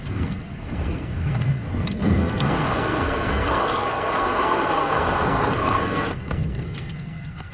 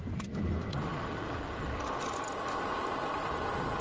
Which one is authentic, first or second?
second